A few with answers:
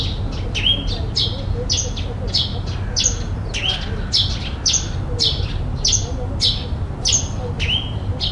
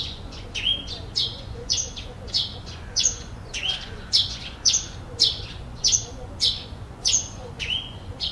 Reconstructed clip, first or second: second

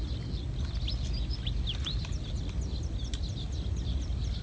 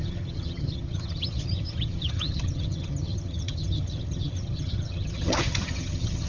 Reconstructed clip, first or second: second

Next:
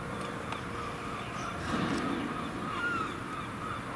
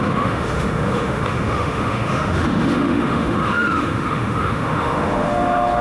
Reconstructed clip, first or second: second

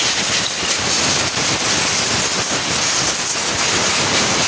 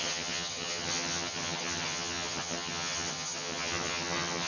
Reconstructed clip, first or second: second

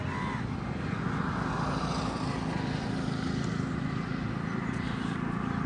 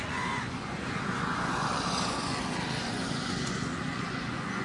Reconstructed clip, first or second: second